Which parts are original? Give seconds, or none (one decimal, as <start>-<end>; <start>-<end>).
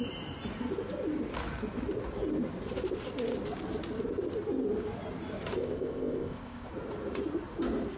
0.0-5.5; 6.7-8.0